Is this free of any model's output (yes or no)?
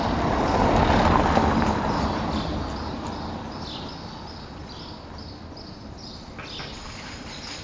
yes